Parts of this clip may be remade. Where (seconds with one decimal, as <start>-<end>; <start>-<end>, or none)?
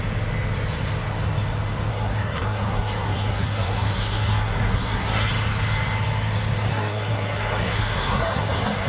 1.9-5.3; 6.7-8.9